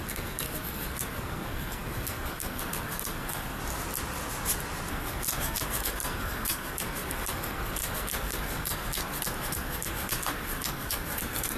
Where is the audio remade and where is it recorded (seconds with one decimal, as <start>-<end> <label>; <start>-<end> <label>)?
0.0-3.6 remade; 3.6-4.9 recorded; 4.9-11.6 remade